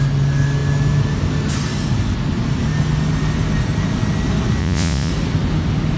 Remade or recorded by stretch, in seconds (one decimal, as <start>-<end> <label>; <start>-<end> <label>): 0.0-4.6 recorded; 4.6-5.1 remade; 5.1-6.0 recorded